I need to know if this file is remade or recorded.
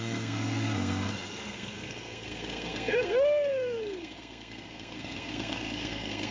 remade